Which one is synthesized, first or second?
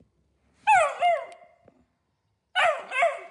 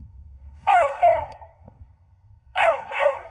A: second